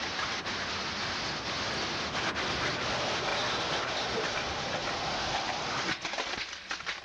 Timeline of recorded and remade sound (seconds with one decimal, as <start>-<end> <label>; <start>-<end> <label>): 0.0-7.0 recorded